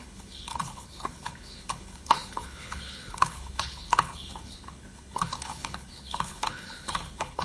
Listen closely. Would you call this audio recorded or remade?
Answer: remade